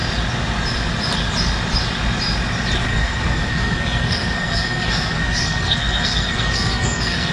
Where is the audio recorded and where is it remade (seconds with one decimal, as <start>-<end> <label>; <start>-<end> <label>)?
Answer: 0.0-2.9 recorded; 2.9-7.3 remade